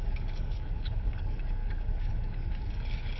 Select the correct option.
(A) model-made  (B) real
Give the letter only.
A